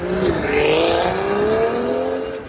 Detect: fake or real real